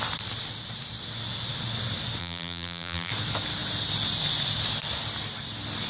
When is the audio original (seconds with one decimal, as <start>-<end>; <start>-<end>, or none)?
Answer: 0.0-2.2; 3.1-5.9